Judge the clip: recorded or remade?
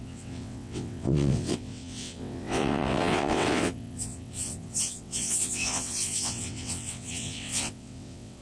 remade